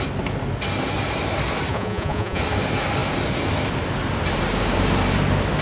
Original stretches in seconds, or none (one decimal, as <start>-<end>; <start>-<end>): 0.0-1.7; 2.4-5.6